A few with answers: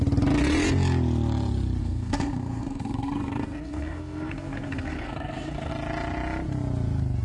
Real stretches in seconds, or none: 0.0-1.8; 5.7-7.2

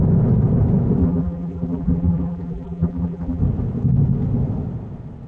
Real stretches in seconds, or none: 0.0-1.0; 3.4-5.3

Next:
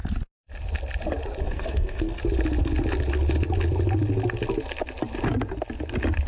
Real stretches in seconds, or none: 0.0-1.4; 2.2-6.3